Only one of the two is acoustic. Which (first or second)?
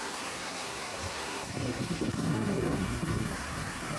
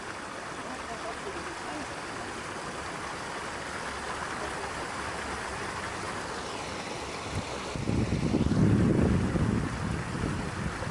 second